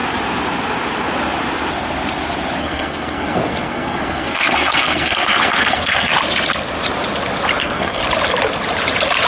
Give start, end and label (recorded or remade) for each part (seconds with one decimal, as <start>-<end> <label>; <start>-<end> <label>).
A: 0.0-2.6 recorded; 2.6-6.1 remade; 6.1-7.6 recorded; 7.6-8.0 remade; 8.0-9.3 recorded